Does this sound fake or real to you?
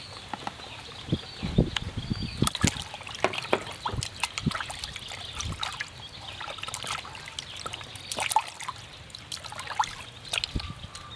real